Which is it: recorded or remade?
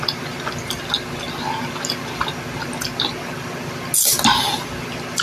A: recorded